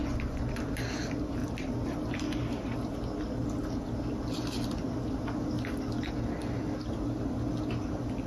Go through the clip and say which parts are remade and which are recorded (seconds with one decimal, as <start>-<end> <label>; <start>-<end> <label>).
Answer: 0.0-0.6 remade; 0.6-8.3 recorded